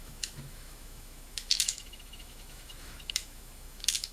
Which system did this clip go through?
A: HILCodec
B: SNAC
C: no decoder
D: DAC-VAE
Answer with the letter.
D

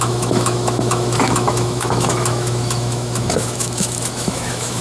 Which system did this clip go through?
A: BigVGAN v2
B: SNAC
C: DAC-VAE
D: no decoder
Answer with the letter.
C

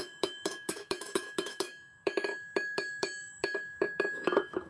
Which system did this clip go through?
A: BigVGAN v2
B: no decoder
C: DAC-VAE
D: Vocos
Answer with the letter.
C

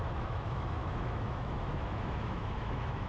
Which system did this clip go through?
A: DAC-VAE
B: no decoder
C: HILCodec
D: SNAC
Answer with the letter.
A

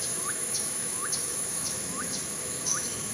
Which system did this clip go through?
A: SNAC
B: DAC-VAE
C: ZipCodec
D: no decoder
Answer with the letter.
B